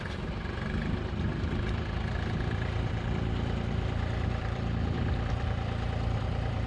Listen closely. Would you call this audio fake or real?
fake